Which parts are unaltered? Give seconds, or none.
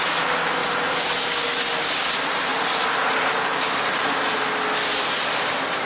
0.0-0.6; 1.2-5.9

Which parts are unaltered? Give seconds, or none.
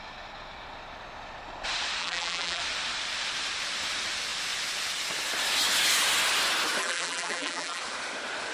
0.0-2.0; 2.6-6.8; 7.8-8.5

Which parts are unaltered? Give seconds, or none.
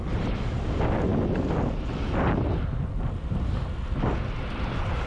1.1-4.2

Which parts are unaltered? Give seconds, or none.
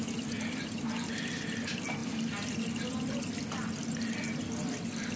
0.0-5.2